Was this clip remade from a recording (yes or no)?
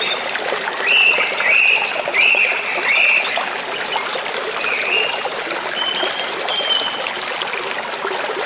no